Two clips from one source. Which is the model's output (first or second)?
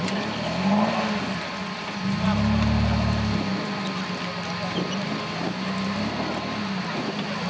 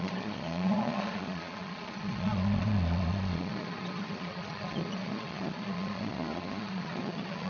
second